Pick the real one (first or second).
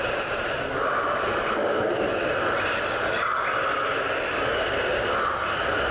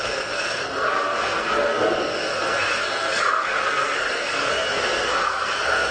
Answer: first